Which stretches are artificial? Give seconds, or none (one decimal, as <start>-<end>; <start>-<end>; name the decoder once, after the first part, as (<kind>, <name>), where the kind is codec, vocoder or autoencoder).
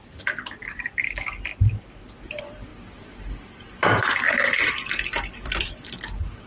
1.5-2.0 (vocoder, BigVGAN v2); 2.7-5.7